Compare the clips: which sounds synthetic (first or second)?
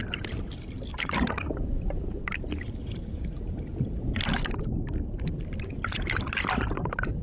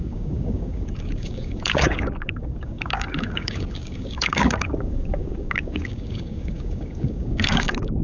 second